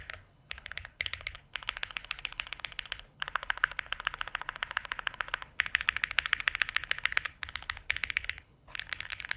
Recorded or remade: remade